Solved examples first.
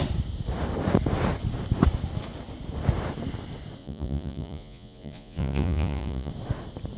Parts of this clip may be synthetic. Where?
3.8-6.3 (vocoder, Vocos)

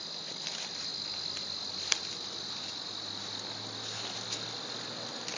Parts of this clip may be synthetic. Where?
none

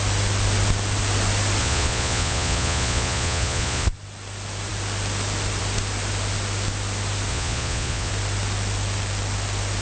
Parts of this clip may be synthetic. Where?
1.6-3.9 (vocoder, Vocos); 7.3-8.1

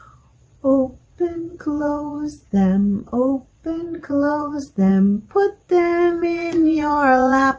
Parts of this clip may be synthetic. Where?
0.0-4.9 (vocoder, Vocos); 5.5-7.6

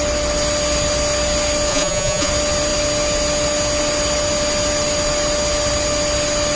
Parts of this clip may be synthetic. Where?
1.7-2.3 (vocoder, Vocos)

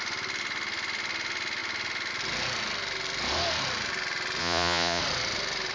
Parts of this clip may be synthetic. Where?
4.4-5.0 (vocoder, Vocos)